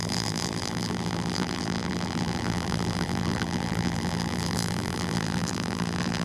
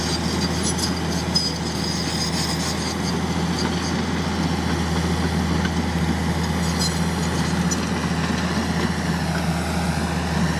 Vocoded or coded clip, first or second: first